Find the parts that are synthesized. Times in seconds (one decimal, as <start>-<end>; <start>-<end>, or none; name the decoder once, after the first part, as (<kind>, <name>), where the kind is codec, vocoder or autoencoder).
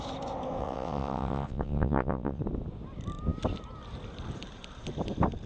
0.6-2.4 (vocoder, WaveNeXt)